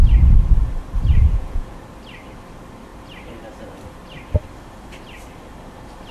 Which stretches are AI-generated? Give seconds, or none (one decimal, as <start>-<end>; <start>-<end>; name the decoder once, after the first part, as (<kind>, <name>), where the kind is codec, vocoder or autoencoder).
1.1-1.8 (vocoder, Vocos)